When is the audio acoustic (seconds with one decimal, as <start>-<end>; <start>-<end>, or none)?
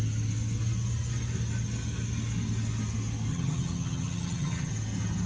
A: 0.0-3.3; 4.7-5.3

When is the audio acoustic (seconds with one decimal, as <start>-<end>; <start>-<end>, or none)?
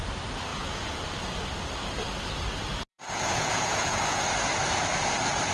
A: 0.0-0.5; 1.0-2.9; 4.3-5.5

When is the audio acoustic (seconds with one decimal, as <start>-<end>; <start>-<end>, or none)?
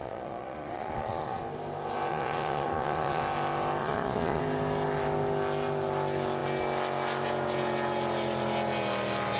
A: 1.4-2.1; 3.2-3.8; 4.4-9.4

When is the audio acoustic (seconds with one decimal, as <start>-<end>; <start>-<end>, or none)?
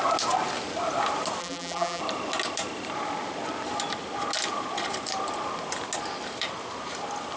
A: 0.0-1.4; 2.0-7.4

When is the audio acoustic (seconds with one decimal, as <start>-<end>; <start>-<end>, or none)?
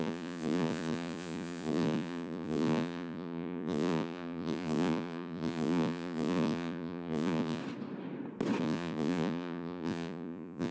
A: 7.6-8.6